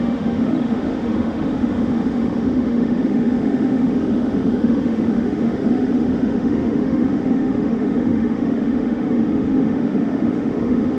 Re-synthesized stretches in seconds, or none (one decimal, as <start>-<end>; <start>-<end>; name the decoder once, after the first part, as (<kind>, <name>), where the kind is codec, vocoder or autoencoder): 0.0-11.0 (autoencoder, DAC-VAE)